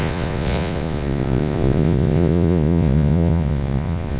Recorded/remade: remade